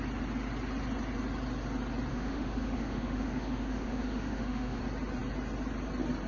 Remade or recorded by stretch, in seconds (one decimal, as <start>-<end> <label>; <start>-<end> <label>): 0.0-2.1 recorded; 2.1-4.8 remade; 4.8-6.3 recorded